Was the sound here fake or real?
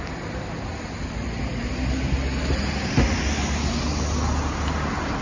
real